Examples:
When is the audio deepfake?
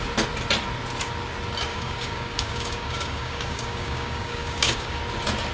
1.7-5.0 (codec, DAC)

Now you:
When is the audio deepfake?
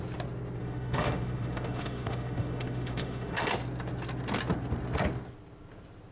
0.6-3.5 (autoencoder, DAC-VAE)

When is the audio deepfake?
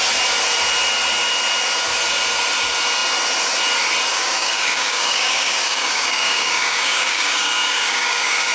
4.1-8.5 (codec, DAC)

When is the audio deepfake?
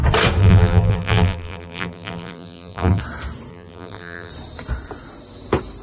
0.4-3.0 (vocoder, BigVGAN v2); 3.5-4.3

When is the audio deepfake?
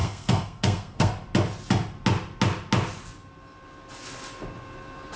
0.0-1.1 (codec, SNAC)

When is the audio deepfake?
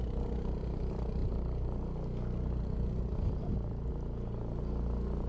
none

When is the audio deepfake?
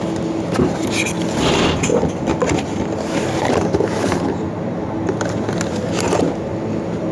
none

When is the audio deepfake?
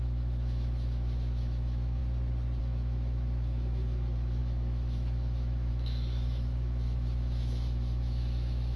0.0-2.0 (autoencoder, DAC-VAE); 2.6-8.8